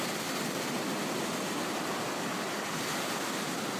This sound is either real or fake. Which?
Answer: real